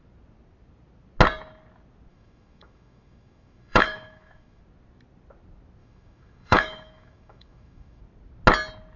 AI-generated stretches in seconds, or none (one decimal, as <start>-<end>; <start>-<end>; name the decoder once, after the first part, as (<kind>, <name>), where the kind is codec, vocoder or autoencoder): 2.1-4.6 (autoencoder, DAC-VAE); 5.8-8.0